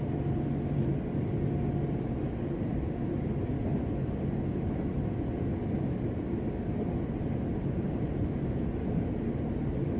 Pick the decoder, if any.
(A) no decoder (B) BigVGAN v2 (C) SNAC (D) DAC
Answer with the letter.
A